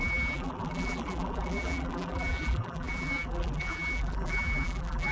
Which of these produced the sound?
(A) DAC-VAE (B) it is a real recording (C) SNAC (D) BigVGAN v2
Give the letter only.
D